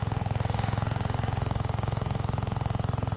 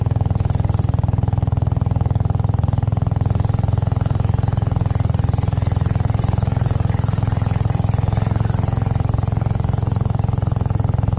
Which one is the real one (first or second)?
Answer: second